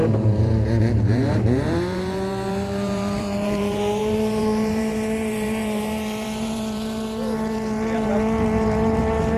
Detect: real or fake fake